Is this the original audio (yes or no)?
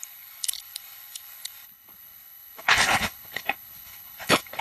no